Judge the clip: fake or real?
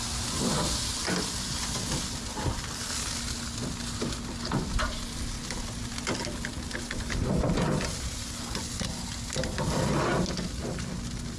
real